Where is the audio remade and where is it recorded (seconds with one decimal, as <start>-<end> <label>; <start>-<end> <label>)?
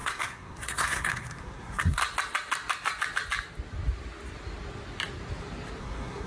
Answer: 0.0-2.0 remade; 2.0-5.8 recorded; 5.8-6.3 remade